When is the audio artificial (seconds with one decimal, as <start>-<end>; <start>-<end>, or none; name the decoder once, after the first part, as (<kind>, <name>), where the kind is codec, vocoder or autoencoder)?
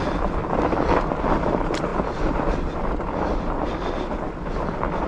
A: 0.0-0.4 (vocoder, BigVGAN v2); 0.9-5.1